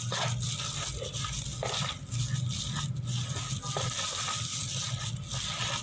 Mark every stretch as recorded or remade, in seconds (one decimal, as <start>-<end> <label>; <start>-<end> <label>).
0.0-5.8 recorded